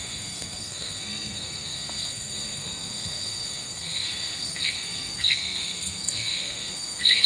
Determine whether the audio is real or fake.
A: fake